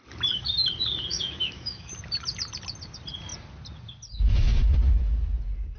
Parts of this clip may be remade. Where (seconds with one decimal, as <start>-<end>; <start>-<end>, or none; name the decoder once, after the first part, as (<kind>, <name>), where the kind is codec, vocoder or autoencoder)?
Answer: 1.1-1.9 (autoencoder, DAC-VAE)